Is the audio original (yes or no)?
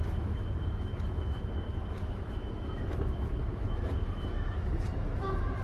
no